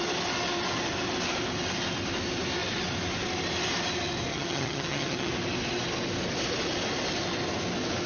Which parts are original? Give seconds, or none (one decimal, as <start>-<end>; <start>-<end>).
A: 0.0-4.3; 5.3-8.1